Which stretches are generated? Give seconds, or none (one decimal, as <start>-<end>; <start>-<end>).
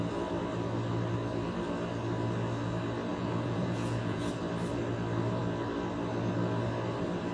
3.1-4.3